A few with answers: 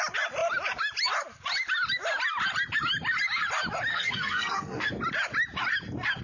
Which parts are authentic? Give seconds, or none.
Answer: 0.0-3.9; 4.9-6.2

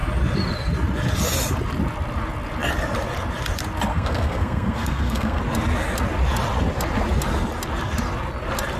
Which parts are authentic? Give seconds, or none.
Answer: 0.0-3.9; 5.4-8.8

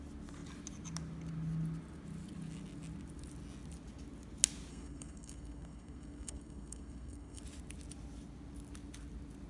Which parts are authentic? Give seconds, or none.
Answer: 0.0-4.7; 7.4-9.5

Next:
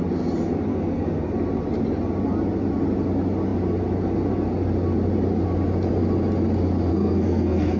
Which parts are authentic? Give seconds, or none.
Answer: 0.0-0.7; 1.3-6.9